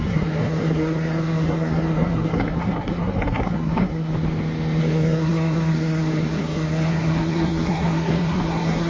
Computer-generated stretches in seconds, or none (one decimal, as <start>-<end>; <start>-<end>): 0.0-4.1; 4.8-8.9